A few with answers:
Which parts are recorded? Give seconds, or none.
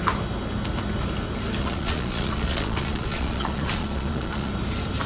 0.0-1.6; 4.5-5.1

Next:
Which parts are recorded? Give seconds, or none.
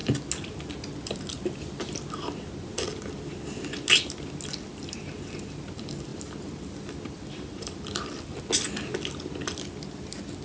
0.0-6.1; 8.4-10.4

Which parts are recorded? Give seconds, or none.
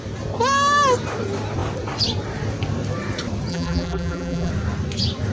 0.0-3.5; 4.5-5.3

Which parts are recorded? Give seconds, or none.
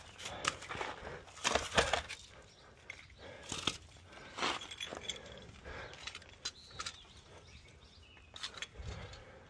0.0-9.5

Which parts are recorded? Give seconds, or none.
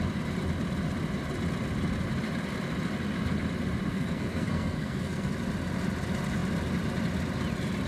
0.0-3.9; 5.3-7.9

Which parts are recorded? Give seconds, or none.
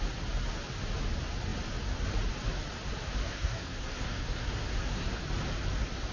0.0-3.3; 5.2-6.1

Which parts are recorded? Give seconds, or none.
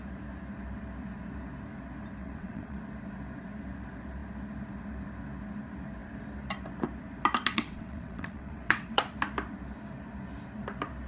0.0-2.2; 2.8-7.5; 9.0-11.1